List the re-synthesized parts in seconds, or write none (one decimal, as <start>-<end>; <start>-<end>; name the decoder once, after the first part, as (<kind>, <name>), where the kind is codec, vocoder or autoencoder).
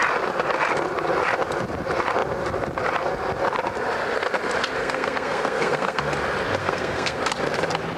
4.8-6.0 (codec, SNAC); 6.6-7.2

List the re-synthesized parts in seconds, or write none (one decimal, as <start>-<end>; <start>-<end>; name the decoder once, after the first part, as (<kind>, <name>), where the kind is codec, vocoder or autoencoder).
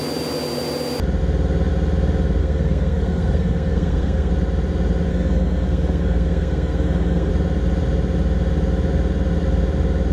2.4-4.3 (codec, SNAC); 5.1-7.3